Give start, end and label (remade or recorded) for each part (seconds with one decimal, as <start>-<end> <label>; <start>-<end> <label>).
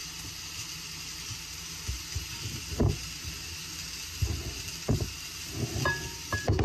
0.0-6.6 recorded